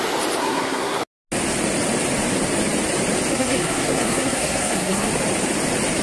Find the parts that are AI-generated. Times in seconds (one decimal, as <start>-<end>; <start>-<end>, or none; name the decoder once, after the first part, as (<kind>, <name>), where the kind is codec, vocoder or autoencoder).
0.4-1.0 (codec, SNAC); 3.3-5.1